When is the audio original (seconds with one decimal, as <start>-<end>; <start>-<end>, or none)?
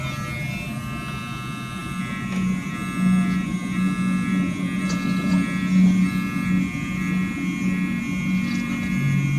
0.0-9.4